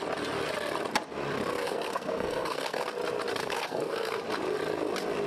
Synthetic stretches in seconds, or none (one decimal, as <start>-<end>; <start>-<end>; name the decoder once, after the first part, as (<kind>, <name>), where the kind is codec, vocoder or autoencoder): 1.5-2.9 (codec, SNAC); 3.4-4.2